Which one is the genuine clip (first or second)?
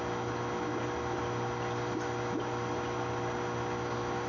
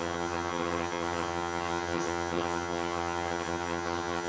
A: first